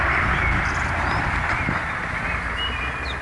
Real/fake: real